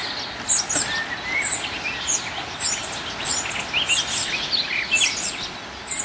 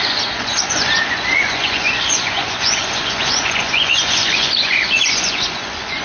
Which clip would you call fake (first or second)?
second